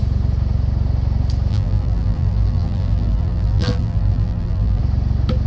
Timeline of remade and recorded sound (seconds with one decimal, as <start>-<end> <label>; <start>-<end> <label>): 0.0-1.5 recorded; 1.5-4.8 remade; 4.8-5.5 recorded